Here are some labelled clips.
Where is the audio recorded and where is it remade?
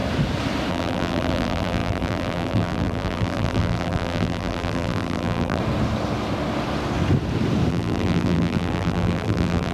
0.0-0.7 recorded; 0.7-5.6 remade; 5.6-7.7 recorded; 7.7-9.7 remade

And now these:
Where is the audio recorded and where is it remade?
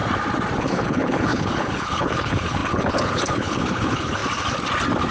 0.0-0.6 recorded; 0.6-4.2 remade; 4.2-5.1 recorded